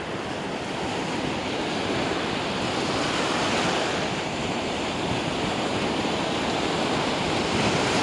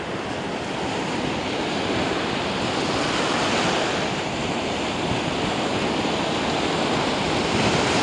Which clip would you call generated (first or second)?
first